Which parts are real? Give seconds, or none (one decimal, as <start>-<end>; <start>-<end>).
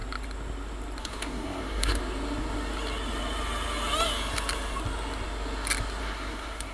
0.0-1.0; 2.0-6.0